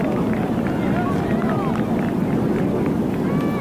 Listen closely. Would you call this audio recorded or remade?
recorded